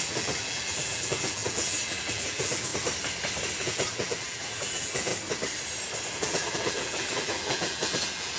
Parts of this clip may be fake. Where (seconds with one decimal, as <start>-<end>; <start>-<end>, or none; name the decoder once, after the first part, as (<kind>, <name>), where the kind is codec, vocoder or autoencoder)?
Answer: 0.0-2.7 (vocoder, BigVGAN v2); 3.5-5.1; 6.2-8.4